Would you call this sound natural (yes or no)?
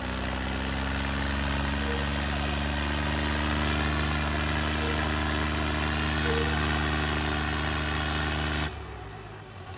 yes